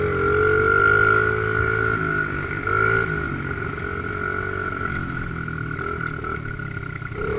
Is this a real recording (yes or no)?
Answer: yes